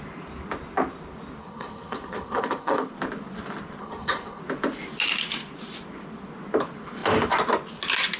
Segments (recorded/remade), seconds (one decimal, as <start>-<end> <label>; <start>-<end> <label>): 0.0-1.4 recorded; 1.4-2.9 remade; 2.9-3.8 recorded; 3.8-4.4 remade; 4.4-8.2 recorded